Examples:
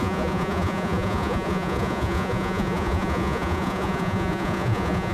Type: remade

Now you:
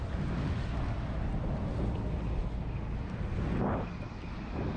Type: recorded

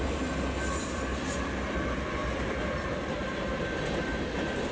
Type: recorded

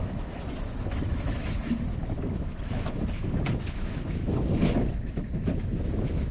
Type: remade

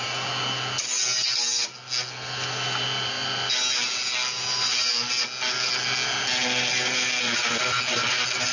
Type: recorded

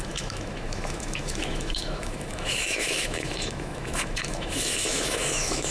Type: remade